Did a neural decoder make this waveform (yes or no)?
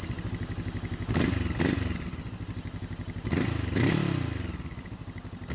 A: no